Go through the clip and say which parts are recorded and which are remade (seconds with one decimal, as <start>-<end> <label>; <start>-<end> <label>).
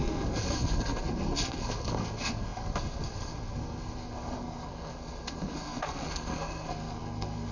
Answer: 0.0-7.5 remade